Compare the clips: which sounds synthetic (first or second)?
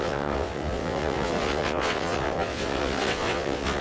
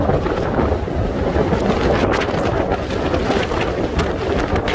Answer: first